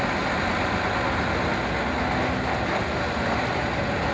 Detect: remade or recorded recorded